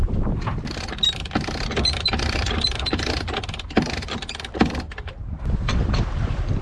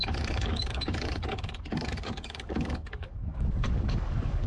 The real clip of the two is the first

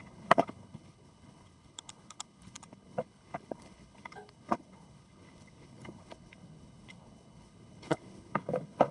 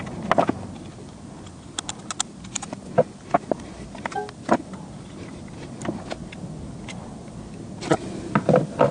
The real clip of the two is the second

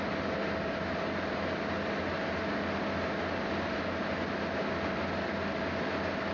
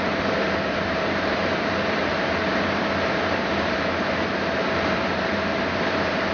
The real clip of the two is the first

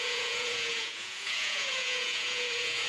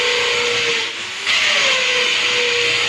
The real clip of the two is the second